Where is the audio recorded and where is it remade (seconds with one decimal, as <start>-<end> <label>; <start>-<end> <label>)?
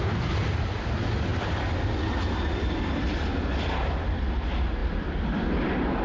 0.0-6.0 recorded